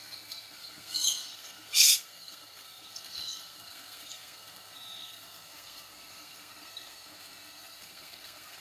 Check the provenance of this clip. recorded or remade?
remade